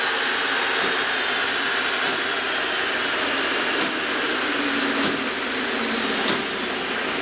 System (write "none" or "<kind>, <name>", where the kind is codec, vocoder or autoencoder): none